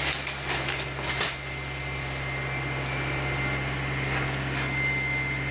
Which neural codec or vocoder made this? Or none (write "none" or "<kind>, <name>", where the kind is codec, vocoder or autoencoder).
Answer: none